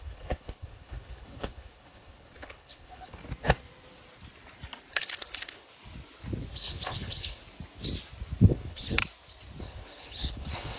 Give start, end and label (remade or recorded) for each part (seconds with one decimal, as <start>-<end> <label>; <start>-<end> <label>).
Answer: 0.0-3.2 remade; 3.2-4.9 recorded; 4.9-5.7 remade; 5.7-6.5 recorded; 6.5-7.4 remade; 7.4-8.5 recorded; 8.5-9.0 remade; 9.0-9.6 recorded; 9.6-10.8 remade